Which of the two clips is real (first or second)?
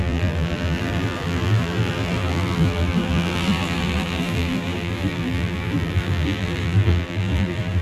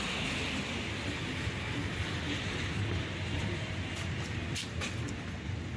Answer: second